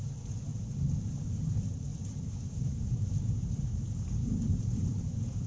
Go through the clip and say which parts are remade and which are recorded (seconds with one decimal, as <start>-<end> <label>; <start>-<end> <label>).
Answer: 0.0-0.5 remade; 0.5-1.0 recorded; 1.0-5.5 remade